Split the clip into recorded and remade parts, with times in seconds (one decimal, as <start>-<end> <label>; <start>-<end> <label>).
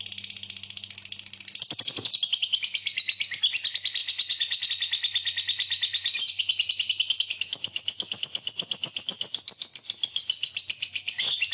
0.0-4.0 recorded; 4.0-4.7 remade; 4.7-11.5 recorded